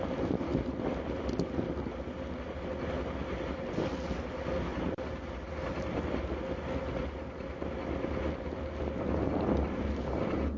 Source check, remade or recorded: recorded